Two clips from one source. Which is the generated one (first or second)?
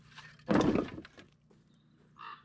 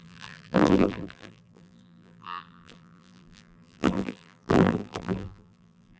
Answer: second